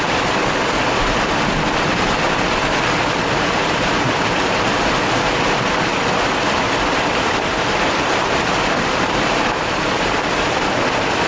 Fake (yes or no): yes